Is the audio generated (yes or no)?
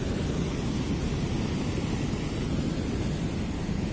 no